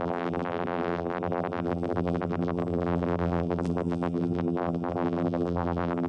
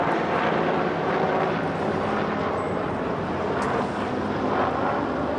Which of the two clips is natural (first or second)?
second